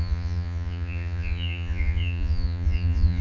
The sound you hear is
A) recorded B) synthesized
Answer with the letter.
B